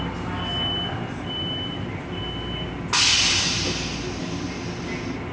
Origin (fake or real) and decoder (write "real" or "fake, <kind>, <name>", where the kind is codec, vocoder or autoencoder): real